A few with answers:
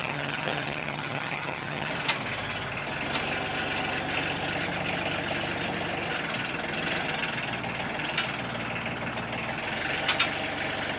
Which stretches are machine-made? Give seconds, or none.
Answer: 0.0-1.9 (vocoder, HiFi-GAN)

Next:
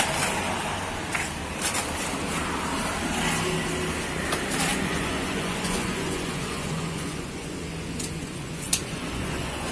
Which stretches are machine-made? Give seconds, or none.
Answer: 4.7-9.7 (vocoder, Vocos)

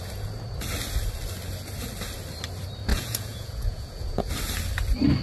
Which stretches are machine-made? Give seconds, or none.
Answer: 2.9-4.3 (vocoder, Vocos)

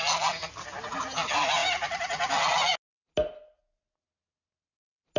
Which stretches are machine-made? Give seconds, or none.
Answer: none

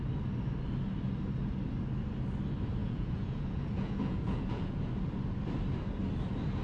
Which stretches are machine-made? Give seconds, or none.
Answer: 2.8-4.9 (vocoder, Vocos)

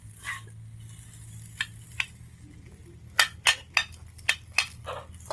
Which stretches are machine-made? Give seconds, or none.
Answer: none